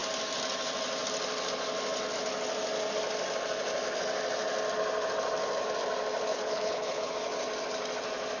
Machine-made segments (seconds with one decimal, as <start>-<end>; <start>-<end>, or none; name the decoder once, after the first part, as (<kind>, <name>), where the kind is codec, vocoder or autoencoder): 6.3-7.1 (codec, HILCodec)